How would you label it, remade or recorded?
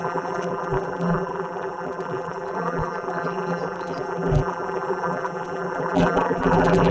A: remade